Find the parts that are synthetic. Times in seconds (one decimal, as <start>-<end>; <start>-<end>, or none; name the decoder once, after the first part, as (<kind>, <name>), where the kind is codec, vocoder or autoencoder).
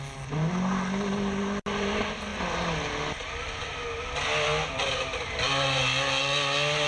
none